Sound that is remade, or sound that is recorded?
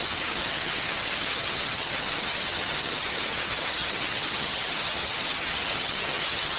remade